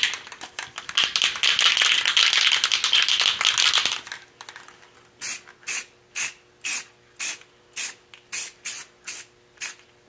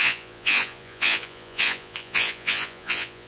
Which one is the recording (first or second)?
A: first